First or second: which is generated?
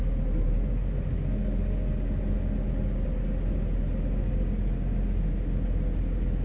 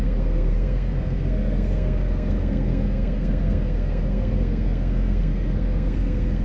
second